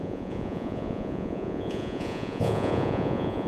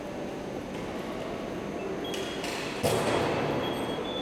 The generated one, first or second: first